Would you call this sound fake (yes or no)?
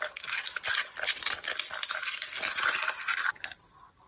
no